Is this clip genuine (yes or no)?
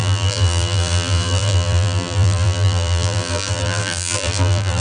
no